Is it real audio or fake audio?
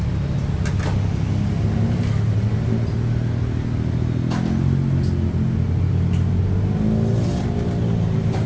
real